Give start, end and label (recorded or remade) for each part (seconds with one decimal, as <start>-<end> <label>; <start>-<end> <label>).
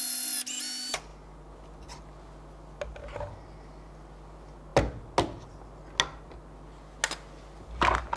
0.0-8.2 recorded